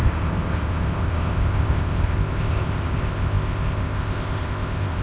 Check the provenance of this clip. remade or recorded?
remade